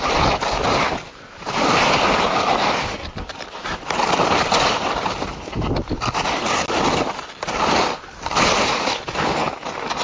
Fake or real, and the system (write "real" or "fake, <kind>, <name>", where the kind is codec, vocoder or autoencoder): real